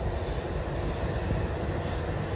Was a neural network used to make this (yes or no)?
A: no